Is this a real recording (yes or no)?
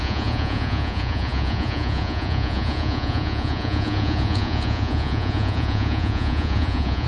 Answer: no